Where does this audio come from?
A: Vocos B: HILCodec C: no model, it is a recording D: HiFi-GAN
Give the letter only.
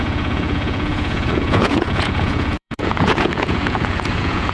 A